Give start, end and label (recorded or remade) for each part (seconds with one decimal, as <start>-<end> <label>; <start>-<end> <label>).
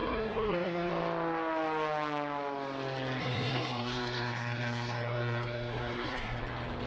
0.0-0.9 remade; 0.9-3.2 recorded; 3.2-6.4 remade; 6.4-6.9 recorded